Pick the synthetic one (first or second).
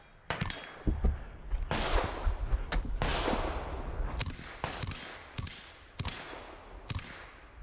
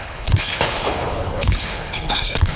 second